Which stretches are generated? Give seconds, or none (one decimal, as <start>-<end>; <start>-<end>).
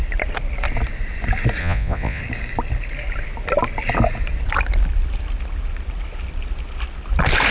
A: 1.6-2.2